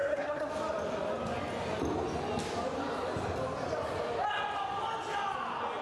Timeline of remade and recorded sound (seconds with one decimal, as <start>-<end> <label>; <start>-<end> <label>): 0.0-0.5 remade; 0.5-5.8 recorded